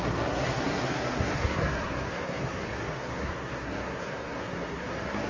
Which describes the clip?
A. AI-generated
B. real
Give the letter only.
A